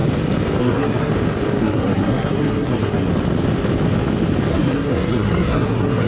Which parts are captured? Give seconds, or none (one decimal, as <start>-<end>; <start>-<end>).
0.0-0.6; 1.1-1.6; 3.1-4.5